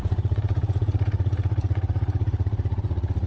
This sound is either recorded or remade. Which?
remade